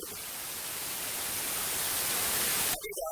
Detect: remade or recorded remade